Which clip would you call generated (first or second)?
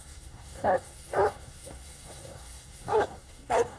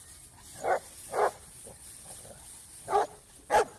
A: first